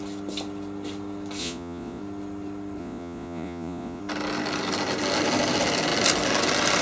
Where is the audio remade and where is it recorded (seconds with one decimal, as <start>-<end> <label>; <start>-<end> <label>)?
0.0-1.4 recorded; 1.4-2.0 remade; 2.0-2.8 recorded; 2.8-4.0 remade; 4.0-6.8 recorded